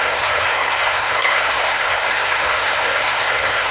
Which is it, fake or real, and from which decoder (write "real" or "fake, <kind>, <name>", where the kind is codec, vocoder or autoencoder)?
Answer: fake, codec, SNAC